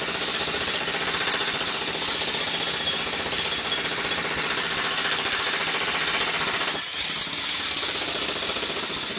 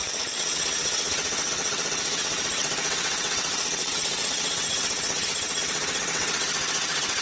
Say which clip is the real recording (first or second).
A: first